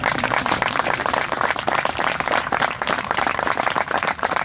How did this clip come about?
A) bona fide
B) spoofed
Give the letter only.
B